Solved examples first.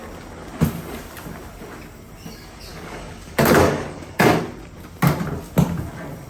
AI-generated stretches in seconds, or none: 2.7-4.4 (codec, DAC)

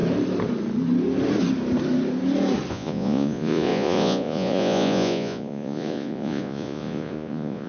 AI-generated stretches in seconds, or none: 2.7-7.7 (vocoder, Vocos)